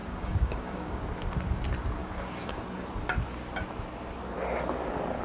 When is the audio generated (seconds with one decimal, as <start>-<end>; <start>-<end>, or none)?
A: 0.0-1.0; 2.0-2.6